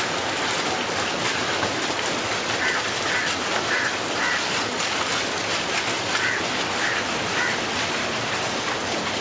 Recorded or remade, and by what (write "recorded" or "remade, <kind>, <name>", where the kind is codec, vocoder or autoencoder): remade, vocoder, BigVGAN v2